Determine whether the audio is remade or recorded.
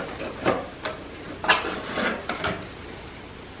recorded